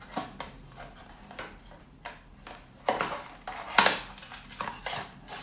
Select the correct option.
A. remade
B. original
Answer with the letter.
B